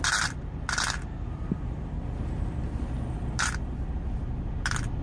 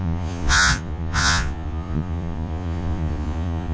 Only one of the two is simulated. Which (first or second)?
second